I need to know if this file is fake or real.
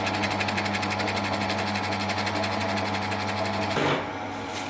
real